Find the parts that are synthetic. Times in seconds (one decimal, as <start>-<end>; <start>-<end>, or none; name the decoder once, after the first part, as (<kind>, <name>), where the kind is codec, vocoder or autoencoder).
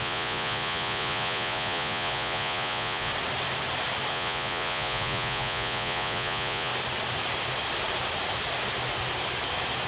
0.0-3.1 (vocoder, Vocos); 4.1-6.7